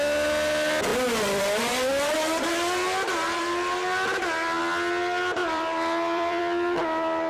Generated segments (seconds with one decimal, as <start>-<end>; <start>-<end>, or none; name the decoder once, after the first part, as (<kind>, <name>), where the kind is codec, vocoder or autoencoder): 5.4-6.4 (vocoder, BigVGAN v2)